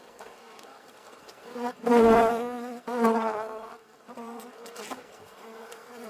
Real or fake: fake